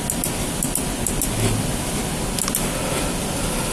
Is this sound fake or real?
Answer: real